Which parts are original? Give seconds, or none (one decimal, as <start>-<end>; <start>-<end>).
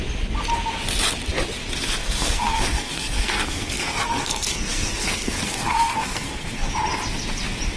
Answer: 0.0-2.0; 6.7-7.8